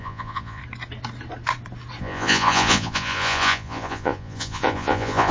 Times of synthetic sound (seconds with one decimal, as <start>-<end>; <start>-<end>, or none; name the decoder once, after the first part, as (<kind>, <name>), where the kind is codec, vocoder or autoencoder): 0.0-0.6 (vocoder, Vocos); 2.0-5.3